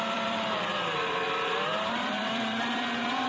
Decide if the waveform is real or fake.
fake